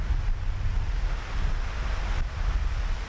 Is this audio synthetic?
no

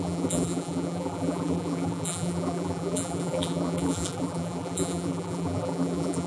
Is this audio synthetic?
yes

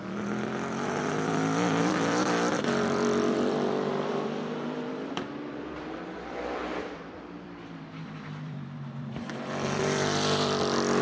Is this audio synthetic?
yes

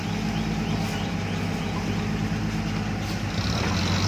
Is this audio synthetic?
no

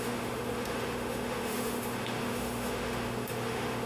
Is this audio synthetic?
yes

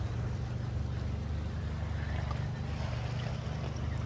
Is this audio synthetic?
no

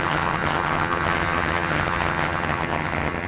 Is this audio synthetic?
yes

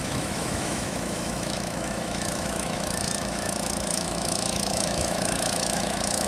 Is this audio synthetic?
yes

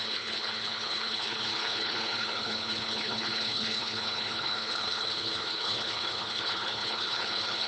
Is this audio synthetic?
yes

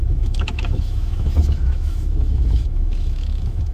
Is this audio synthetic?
yes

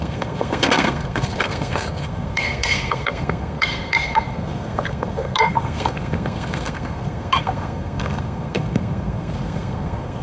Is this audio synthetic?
yes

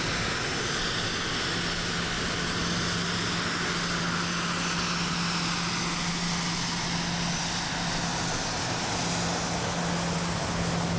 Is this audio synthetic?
no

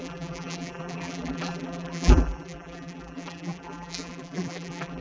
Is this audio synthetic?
yes